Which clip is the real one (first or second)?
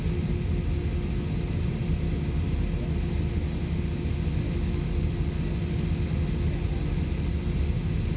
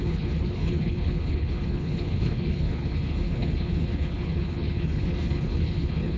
first